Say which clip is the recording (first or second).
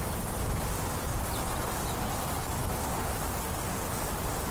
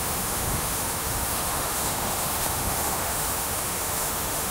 first